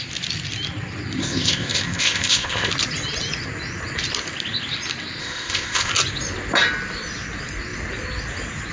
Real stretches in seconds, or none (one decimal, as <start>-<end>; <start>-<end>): 0.0-1.2; 2.7-5.2; 5.9-8.7